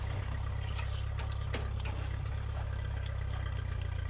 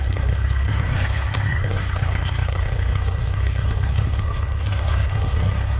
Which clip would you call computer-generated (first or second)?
second